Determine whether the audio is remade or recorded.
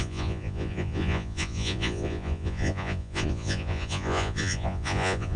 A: remade